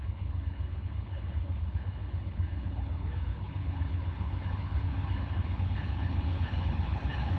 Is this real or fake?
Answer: fake